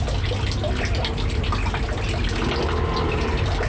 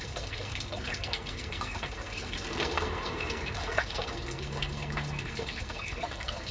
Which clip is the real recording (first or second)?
first